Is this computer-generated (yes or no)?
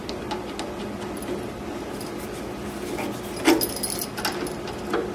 no